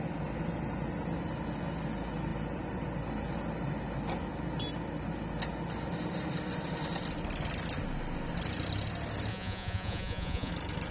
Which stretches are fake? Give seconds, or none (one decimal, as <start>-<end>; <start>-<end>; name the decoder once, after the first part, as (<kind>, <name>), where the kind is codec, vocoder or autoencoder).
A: 9.3-10.5 (vocoder, Vocos)